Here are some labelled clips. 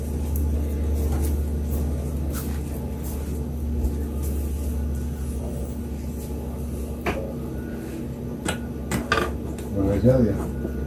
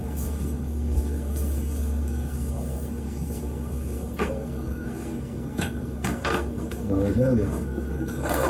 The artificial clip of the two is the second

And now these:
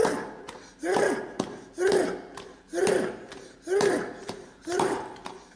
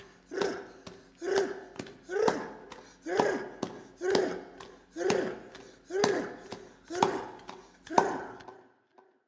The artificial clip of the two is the first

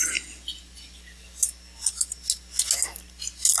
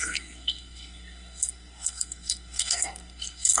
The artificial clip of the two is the second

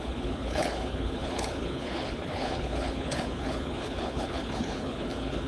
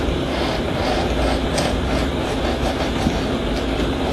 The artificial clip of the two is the first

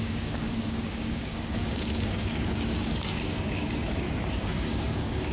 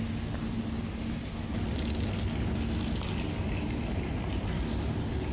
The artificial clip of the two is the first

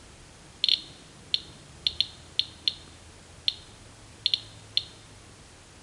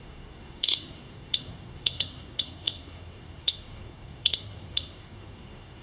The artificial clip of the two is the second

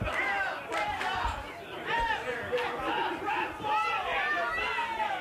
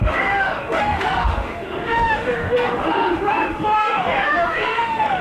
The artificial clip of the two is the second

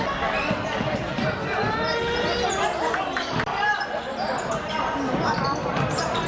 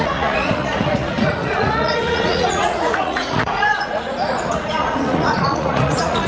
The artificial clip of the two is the second